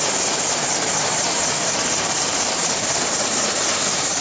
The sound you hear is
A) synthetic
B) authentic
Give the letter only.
A